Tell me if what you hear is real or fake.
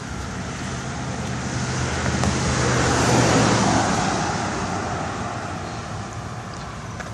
real